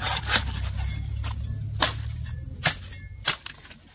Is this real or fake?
real